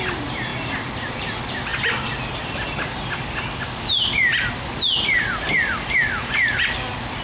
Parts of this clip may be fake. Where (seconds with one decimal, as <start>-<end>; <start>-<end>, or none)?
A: none